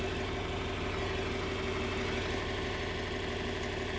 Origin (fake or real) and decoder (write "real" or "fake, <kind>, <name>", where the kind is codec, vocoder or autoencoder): real